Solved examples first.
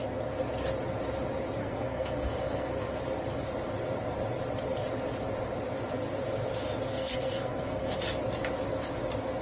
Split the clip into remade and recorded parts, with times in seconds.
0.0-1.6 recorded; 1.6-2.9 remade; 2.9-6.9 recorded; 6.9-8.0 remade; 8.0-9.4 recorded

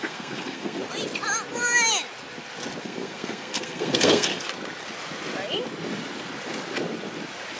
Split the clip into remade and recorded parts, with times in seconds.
0.0-0.8 remade; 0.8-2.8 recorded; 2.8-4.3 remade; 4.3-7.6 recorded

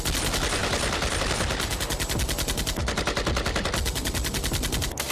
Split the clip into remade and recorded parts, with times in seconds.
0.0-5.1 recorded

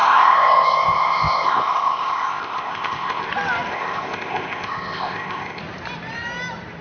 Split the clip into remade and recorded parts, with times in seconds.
0.0-3.3 remade; 3.3-3.7 recorded; 3.7-5.6 remade; 5.6-6.8 recorded

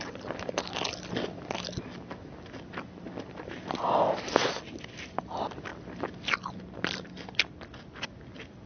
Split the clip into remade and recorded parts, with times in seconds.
0.0-8.7 recorded